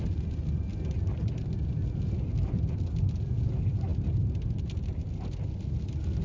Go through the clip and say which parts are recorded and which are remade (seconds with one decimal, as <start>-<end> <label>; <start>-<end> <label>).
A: 0.0-6.2 recorded